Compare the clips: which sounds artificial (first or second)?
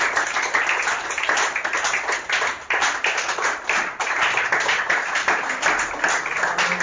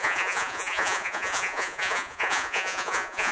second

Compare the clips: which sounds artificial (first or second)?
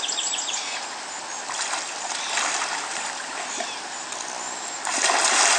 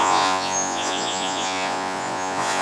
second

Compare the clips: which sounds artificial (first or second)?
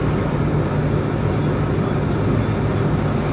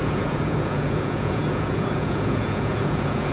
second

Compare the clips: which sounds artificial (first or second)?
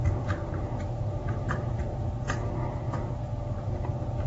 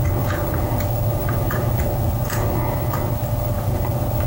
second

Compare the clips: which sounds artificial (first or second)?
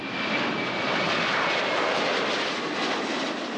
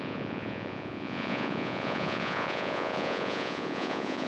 second